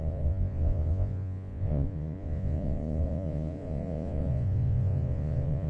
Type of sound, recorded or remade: remade